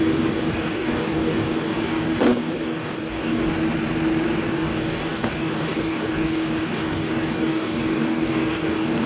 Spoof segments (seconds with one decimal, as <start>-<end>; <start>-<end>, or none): 0.0-3.5; 4.5-9.1